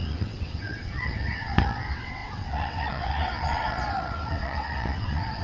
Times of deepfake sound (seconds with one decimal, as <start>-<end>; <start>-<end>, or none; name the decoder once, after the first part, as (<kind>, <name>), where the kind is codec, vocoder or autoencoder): 0.0-5.4 (vocoder, WaveNeXt)